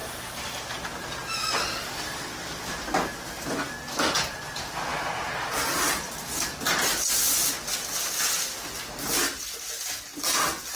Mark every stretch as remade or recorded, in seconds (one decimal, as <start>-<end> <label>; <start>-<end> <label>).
0.0-0.7 remade; 0.7-10.8 recorded